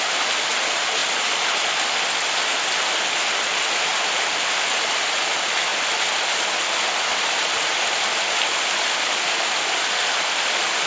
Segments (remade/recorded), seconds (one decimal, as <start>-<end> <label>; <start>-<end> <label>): 0.0-10.9 recorded